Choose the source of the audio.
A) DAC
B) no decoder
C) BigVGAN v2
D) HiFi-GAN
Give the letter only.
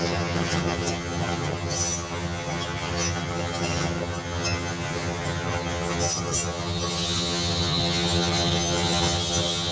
D